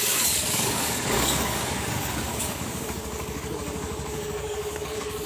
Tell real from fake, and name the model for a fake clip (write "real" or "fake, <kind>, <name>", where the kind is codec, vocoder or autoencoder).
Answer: fake, codec, DAC